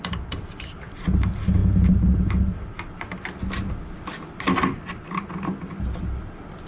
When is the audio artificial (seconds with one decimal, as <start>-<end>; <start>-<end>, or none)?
none